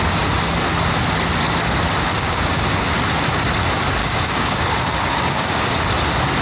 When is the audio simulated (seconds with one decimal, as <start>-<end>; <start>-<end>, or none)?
2.1-2.6; 4.0-5.6